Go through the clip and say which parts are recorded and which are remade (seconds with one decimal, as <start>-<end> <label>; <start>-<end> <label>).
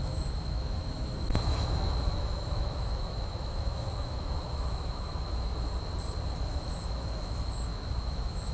0.0-5.7 remade; 5.7-6.5 recorded; 6.5-8.5 remade